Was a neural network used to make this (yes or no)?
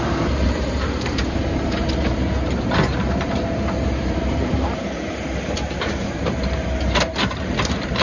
yes